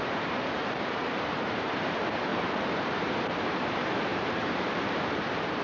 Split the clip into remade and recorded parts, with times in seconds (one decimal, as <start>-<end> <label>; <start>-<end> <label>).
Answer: 0.0-2.3 remade; 2.3-3.0 recorded; 3.0-5.6 remade